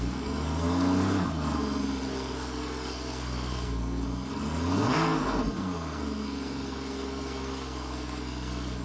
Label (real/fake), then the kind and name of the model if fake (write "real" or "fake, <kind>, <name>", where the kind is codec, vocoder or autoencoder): fake, codec, SNAC